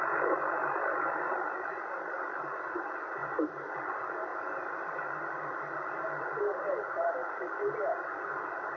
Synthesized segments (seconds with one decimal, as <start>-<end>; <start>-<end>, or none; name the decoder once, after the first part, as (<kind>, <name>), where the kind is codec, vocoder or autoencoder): 3.2-3.8 (vocoder, BigVGAN v2); 4.3-6.4